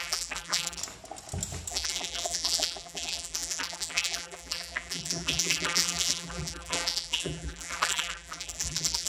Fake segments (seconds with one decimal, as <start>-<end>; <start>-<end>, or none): 0.0-0.8; 1.7-9.1

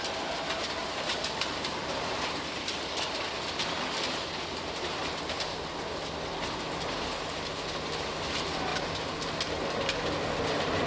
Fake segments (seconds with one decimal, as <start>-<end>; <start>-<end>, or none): 0.8-3.2; 4.5-5.0; 8.7-9.3

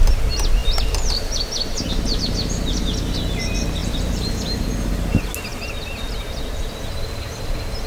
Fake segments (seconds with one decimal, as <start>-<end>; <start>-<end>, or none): 0.6-1.8; 3.8-4.7; 5.5-6.7

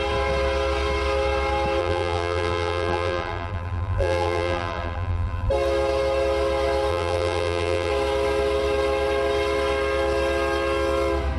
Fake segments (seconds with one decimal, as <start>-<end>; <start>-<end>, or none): 1.8-5.5; 6.9-7.9

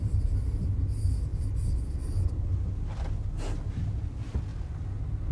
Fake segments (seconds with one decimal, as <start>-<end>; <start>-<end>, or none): 1.3-2.4